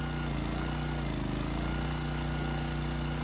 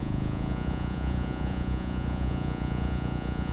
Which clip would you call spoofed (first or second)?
second